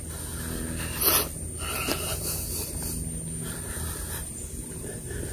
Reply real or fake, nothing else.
real